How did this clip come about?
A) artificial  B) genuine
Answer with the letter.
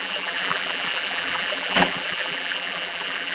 A